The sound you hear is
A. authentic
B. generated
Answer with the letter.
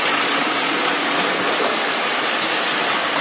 A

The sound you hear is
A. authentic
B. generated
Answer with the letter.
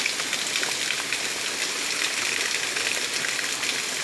A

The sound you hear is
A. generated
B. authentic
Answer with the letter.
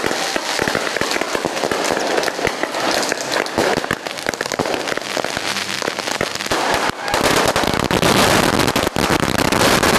B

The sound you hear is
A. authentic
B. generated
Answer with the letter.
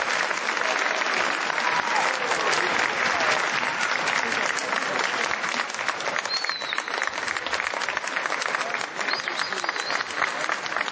A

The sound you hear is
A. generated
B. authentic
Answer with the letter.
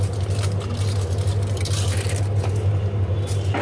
B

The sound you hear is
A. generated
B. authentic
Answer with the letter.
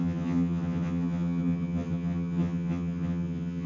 A